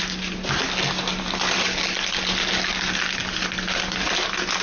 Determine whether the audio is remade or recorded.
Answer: recorded